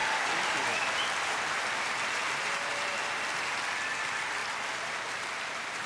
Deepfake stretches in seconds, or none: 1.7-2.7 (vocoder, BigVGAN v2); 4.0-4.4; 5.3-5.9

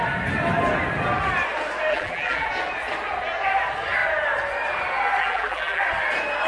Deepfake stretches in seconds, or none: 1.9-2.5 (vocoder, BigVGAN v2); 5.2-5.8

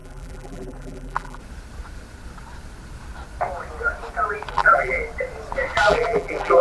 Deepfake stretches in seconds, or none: 0.0-1.4 (vocoder, BigVGAN v2); 4.5-5.0; 5.9-6.6